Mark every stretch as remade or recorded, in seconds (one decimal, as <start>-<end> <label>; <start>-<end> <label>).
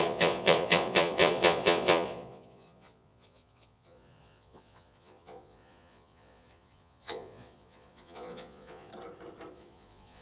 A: 0.0-8.9 remade; 8.9-9.5 recorded; 9.5-10.2 remade